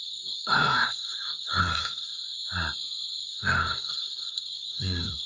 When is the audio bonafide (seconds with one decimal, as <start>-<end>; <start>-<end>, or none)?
2.1-3.2